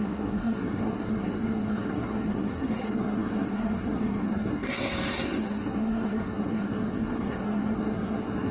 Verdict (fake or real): fake